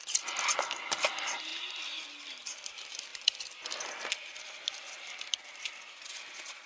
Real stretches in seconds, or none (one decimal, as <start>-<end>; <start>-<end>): 0.0-0.9; 1.5-2.2; 3.1-4.4